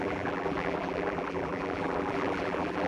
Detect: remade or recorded remade